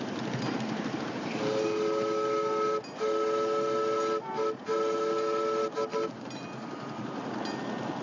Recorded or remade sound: recorded